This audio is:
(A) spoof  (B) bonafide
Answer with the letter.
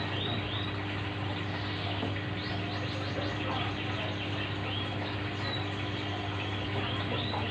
B